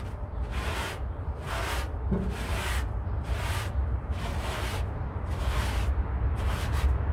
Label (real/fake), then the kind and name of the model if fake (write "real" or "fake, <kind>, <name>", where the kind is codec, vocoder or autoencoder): fake, vocoder, BigVGAN v2